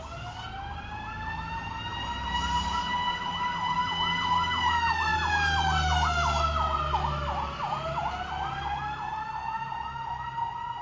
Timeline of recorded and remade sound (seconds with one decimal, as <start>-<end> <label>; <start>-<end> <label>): 0.0-10.8 recorded